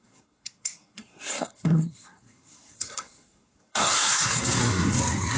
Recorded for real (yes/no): no